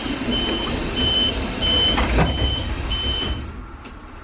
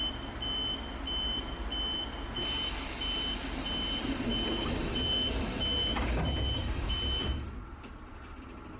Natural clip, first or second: second